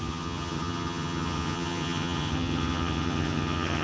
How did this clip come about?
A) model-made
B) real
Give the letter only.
A